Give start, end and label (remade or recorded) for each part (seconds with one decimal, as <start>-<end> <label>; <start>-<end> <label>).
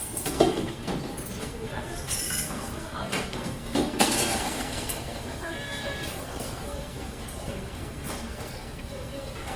0.0-0.9 remade; 0.9-1.4 recorded; 1.4-9.6 remade